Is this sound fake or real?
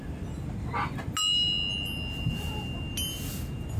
real